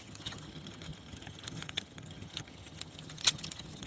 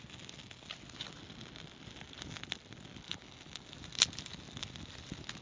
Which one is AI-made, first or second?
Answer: first